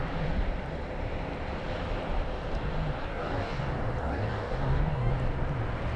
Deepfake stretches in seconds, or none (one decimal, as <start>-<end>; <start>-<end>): 3.0-3.6; 4.0-5.1